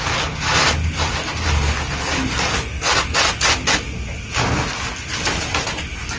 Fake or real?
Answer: real